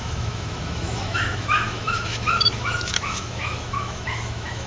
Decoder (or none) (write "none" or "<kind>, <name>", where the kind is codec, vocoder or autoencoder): autoencoder, DAC-VAE